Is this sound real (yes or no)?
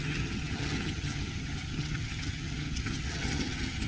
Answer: no